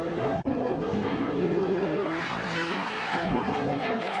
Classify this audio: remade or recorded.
remade